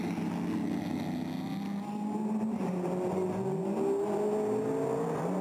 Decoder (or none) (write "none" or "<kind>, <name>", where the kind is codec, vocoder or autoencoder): none